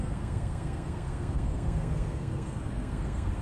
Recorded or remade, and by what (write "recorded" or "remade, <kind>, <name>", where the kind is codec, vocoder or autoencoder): remade, codec, SNAC